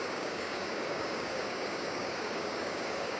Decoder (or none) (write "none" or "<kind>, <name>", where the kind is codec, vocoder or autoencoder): codec, DAC